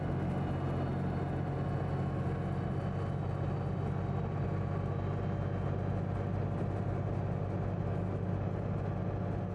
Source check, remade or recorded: recorded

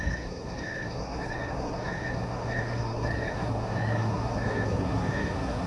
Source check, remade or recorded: remade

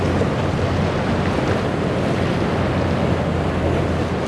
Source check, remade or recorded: recorded